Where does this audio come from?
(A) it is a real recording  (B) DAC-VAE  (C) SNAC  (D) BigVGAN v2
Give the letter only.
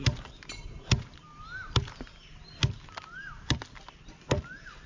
A